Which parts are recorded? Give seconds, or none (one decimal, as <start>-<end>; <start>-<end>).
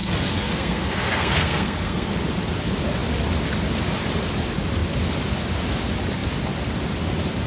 2.1-7.5